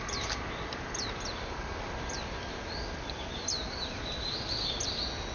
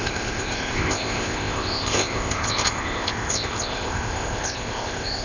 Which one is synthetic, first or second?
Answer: second